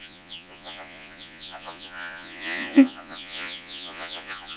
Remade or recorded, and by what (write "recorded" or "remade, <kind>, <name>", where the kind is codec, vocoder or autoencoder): remade, vocoder, Vocos